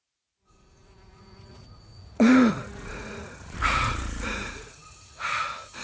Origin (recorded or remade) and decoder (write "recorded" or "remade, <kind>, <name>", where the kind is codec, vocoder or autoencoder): remade, vocoder, Vocos